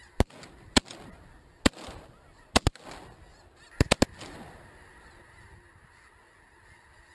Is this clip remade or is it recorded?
recorded